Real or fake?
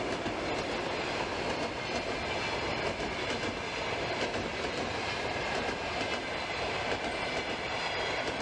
real